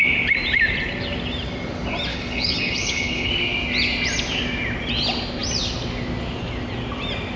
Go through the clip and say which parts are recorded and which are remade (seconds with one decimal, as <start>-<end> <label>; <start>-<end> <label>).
0.0-2.1 recorded; 2.1-3.3 remade; 3.3-7.4 recorded